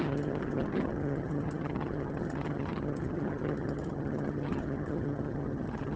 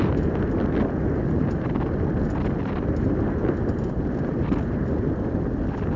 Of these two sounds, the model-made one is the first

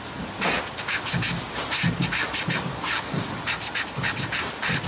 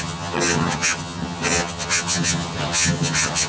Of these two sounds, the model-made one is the second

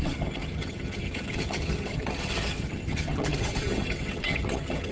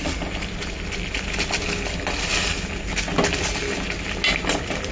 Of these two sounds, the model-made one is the first